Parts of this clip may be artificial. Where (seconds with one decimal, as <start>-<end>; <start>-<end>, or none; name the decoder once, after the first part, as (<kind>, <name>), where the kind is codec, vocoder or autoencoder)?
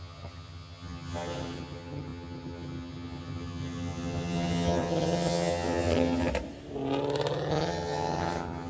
0.0-6.3 (vocoder, HiFi-GAN); 7.5-8.7